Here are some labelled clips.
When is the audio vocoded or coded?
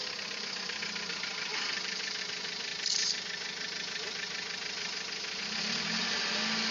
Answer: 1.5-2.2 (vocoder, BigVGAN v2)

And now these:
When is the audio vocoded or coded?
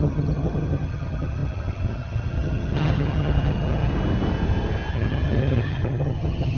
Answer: 0.0-3.9 (vocoder, HiFi-GAN); 4.9-6.6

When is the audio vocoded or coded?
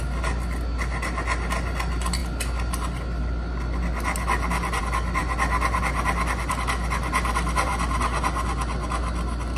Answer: none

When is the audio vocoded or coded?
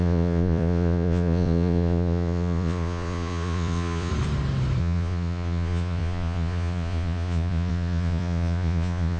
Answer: 0.0-4.1 (vocoder, Vocos); 4.8-9.2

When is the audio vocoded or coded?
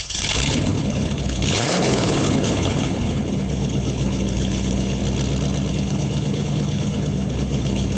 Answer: 0.0-5.0 (codec, HILCodec); 5.7-8.0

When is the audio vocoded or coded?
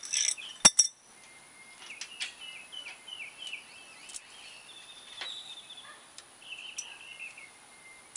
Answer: none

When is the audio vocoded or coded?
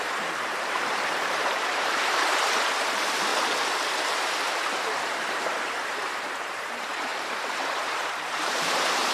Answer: 0.0-3.3 (vocoder, BigVGAN v2); 4.1-9.1